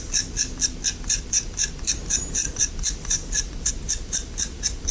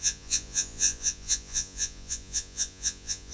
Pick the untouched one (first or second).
first